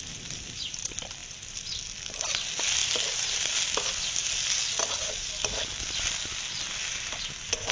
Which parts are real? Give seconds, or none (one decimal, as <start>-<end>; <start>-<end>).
0.0-7.7